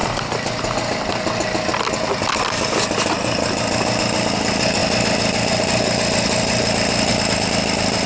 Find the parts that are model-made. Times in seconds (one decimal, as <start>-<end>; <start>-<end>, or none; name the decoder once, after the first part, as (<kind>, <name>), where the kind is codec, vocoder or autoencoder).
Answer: none